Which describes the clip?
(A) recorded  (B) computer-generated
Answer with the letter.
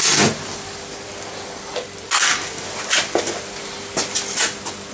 A